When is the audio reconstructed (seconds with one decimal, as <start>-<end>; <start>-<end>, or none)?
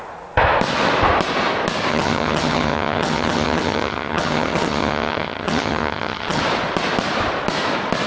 1.9-6.4